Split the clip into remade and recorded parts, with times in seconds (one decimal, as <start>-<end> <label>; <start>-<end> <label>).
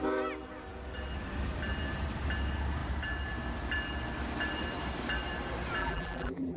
0.0-5.8 recorded; 5.8-6.6 remade